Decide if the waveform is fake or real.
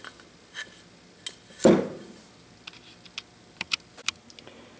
real